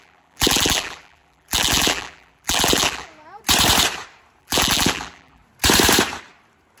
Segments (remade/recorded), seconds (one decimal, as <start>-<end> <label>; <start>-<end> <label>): 0.0-3.1 remade; 3.1-4.4 recorded; 4.4-5.4 remade; 5.4-6.8 recorded